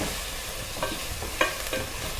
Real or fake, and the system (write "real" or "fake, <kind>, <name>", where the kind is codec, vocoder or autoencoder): real